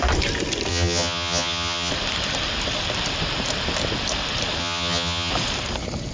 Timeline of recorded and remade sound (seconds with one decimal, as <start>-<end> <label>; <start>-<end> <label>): 0.0-0.7 recorded; 0.7-1.9 remade; 1.9-4.6 recorded; 4.6-5.3 remade; 5.3-6.1 recorded